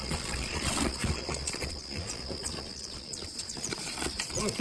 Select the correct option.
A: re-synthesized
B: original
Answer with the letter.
A